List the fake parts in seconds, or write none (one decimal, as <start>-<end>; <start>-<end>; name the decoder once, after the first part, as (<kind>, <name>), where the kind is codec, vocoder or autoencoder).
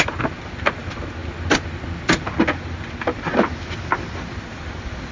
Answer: none